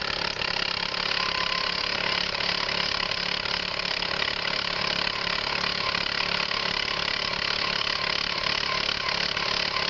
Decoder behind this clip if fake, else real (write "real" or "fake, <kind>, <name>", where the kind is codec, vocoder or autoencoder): real